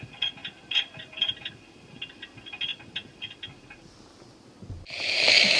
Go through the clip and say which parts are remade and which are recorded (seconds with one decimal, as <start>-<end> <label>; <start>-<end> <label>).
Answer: 0.0-5.6 recorded

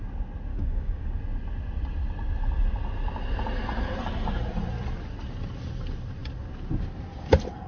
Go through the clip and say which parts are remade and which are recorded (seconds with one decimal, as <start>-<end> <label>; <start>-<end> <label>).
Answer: 0.0-0.5 recorded; 0.5-1.2 remade; 1.2-7.7 recorded

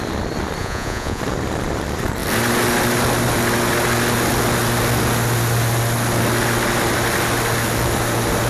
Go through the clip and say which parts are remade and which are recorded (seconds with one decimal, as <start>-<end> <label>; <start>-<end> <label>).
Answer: 0.0-0.6 recorded; 0.6-1.2 remade; 1.2-8.5 recorded

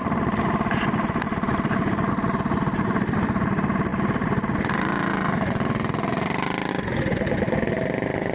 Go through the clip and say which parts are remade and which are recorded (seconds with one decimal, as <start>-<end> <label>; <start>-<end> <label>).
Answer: 0.0-8.3 recorded